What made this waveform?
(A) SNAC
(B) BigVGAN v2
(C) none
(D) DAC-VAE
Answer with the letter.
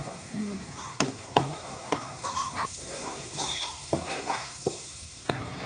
A